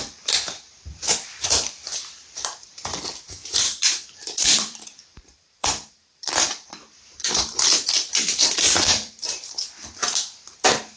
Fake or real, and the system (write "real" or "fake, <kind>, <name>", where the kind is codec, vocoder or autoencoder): fake, vocoder, BigVGAN v2